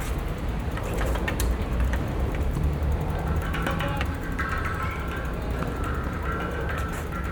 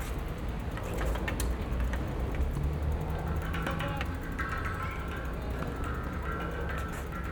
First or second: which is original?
second